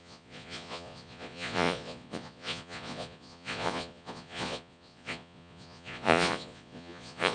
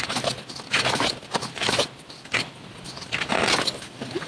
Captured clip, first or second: second